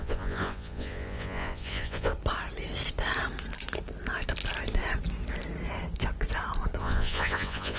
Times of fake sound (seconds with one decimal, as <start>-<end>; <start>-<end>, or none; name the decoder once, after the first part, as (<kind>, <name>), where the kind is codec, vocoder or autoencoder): 0.0-2.1 (vocoder, Vocos); 6.8-7.8